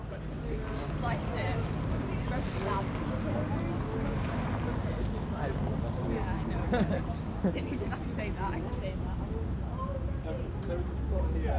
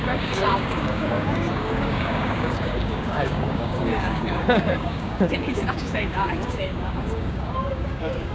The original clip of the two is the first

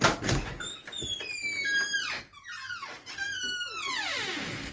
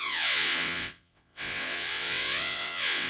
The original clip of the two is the first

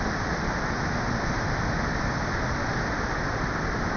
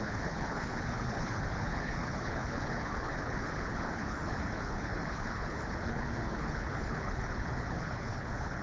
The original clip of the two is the first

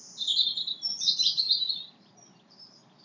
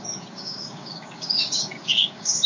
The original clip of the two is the first